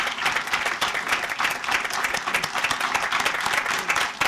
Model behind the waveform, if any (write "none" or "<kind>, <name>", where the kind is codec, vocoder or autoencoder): none